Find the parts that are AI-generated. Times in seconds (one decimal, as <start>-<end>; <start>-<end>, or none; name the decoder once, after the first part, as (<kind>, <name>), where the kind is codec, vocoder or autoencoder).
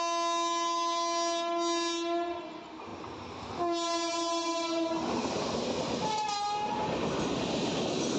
none